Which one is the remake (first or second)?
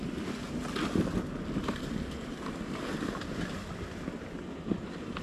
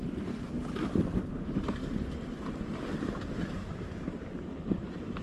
second